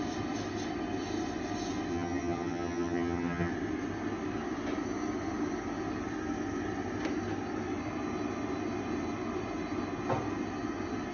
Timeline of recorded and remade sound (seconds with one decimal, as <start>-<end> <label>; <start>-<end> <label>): 0.0-1.9 recorded; 1.9-3.5 remade; 3.5-11.1 recorded